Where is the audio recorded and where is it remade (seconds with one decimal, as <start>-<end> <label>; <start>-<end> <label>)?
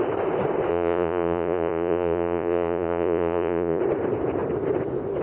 0.0-0.7 recorded; 0.7-3.8 remade; 3.8-5.2 recorded